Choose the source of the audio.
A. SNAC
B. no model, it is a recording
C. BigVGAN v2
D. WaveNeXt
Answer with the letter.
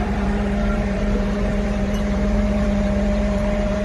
C